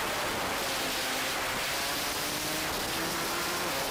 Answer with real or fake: real